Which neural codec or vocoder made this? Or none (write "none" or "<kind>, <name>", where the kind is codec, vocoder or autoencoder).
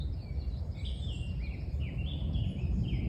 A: vocoder, BigVGAN v2